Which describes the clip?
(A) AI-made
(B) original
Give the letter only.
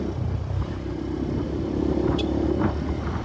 A